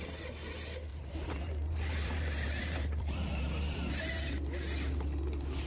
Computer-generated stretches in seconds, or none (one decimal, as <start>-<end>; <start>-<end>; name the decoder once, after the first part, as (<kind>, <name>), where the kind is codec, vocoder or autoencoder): 0.9-4.3 (vocoder, BigVGAN v2)